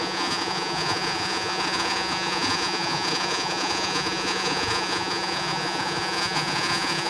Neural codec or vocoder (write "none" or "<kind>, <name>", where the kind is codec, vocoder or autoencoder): vocoder, Vocos